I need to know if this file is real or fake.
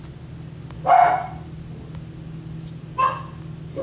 real